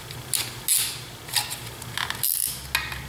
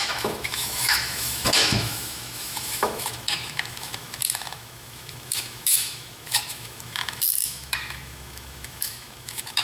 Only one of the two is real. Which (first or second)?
first